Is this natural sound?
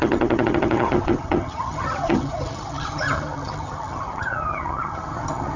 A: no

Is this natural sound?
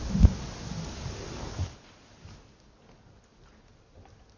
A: yes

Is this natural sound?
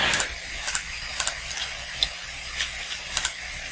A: yes